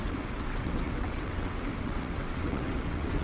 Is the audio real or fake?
fake